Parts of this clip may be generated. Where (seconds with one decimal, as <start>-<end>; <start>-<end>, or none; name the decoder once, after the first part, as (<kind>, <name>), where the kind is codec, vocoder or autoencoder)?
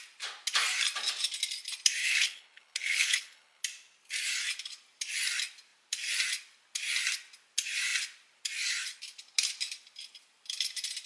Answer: 2.0-3.6 (codec, HILCodec)